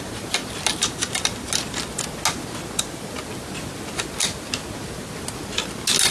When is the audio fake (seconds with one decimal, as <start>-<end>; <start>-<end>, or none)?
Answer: none